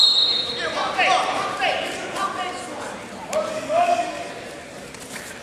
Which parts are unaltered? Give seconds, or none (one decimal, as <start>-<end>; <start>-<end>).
0.0-3.5; 4.3-5.4